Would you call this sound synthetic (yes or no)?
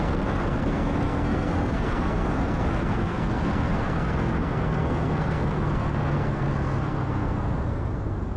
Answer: yes